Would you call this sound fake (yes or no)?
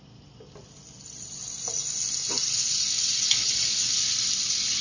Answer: no